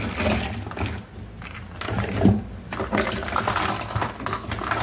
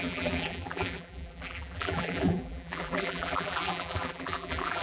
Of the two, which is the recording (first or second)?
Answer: first